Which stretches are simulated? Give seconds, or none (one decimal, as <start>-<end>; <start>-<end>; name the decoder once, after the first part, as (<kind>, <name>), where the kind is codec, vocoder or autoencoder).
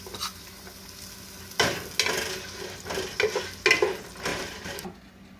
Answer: 4.3-5.4 (vocoder, BigVGAN v2)